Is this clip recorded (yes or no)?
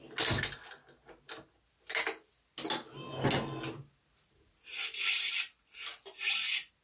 yes